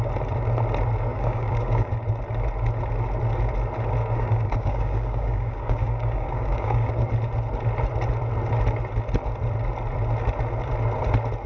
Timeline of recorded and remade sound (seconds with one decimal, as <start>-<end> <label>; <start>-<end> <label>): 0.0-1.1 recorded; 1.1-1.9 remade; 1.9-4.0 recorded; 4.0-6.9 remade; 6.9-11.5 recorded